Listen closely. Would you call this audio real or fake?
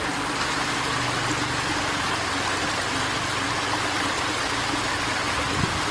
real